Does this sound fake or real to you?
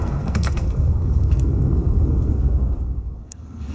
fake